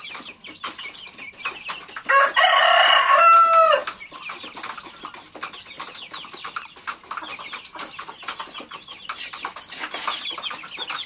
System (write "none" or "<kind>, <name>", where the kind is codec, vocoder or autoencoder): none